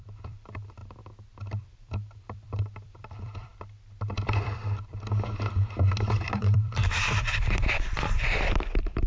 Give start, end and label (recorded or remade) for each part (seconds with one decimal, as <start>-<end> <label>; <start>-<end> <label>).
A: 0.0-0.8 remade; 0.8-1.6 recorded; 1.6-3.5 remade; 3.5-4.1 recorded; 4.1-4.6 remade; 4.6-6.2 recorded; 6.2-9.1 remade